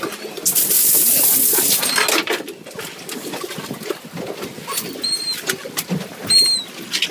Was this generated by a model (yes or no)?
no